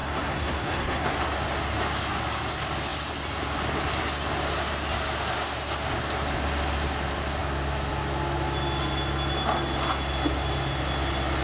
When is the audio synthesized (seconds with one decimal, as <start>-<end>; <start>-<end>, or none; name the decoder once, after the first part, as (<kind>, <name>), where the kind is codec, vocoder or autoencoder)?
0.0-1.1 (codec, SNAC)

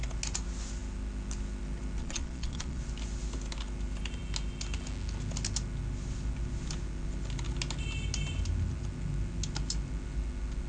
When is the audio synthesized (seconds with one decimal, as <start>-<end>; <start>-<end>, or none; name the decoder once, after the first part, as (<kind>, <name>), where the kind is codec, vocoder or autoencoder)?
2.0-2.8 (vocoder, Vocos)